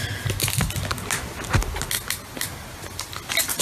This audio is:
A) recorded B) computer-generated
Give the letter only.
A